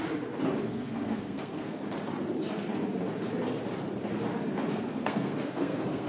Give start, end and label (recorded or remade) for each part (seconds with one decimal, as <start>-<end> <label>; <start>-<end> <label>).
0.0-0.6 recorded; 0.6-1.8 remade; 1.8-4.7 recorded; 4.7-6.1 remade